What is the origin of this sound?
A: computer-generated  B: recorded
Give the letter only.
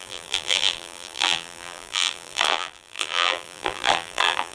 A